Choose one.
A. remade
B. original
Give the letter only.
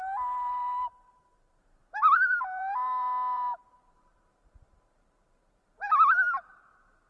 A